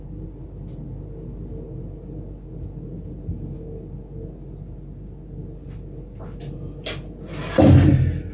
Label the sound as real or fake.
real